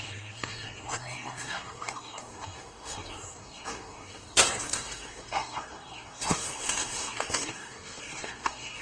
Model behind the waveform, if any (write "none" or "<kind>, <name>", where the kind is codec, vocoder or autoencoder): codec, SNAC